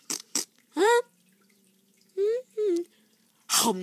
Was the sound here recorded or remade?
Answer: remade